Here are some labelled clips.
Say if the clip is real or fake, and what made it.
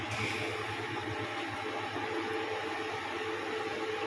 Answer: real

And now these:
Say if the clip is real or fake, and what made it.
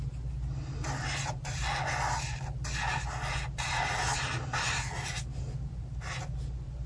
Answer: real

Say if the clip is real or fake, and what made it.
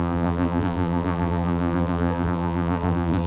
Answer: fake, vocoder, BigVGAN v2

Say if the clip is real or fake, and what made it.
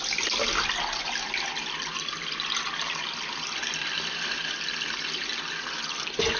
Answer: real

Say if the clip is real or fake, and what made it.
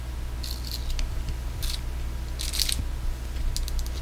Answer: real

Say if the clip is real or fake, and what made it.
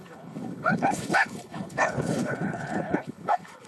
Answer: fake, codec, HILCodec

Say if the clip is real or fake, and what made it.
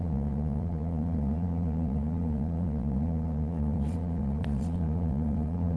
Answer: fake, vocoder, Vocos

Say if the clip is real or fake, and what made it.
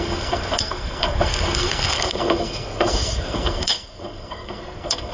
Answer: fake, codec, SNAC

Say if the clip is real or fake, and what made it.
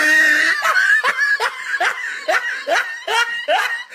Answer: real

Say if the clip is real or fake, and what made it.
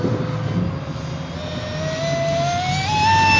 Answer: real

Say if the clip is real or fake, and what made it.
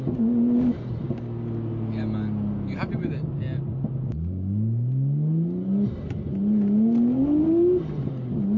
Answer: real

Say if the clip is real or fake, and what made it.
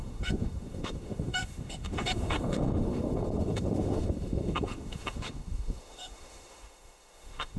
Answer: fake, autoencoder, DAC-VAE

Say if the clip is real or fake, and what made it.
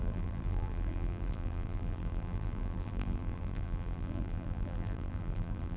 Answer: fake, vocoder, BigVGAN v2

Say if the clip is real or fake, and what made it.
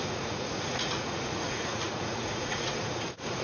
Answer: fake, vocoder, Vocos